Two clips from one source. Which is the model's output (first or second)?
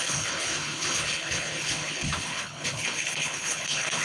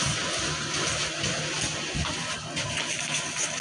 first